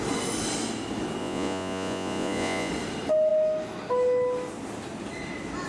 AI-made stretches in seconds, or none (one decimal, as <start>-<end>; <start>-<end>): 1.2-2.7